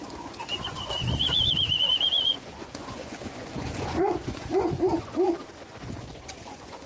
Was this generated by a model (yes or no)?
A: yes